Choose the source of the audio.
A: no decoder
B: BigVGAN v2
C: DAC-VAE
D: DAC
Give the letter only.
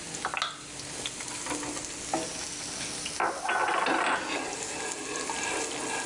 A